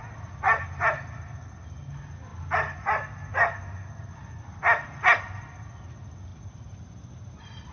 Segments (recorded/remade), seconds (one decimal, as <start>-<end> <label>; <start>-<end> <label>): 0.0-6.3 recorded; 6.3-7.7 remade